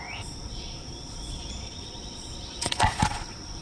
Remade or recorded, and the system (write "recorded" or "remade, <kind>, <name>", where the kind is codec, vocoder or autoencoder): remade, vocoder, Vocos